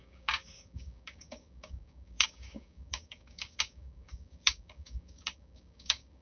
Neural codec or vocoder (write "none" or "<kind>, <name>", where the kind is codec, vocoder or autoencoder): codec, DAC